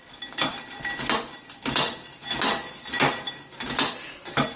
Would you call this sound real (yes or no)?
yes